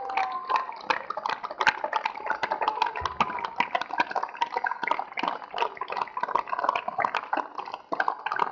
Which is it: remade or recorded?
recorded